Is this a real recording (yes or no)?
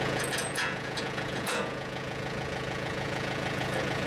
no